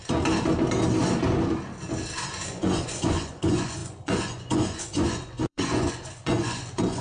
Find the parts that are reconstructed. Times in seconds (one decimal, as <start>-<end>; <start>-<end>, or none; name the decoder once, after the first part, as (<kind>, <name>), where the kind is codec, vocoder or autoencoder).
2.5-7.0 (vocoder, Vocos)